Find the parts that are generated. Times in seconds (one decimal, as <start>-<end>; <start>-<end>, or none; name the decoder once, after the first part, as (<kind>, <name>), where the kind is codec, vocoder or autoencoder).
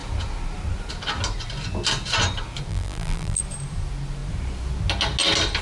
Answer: 2.7-3.4 (vocoder, BigVGAN v2)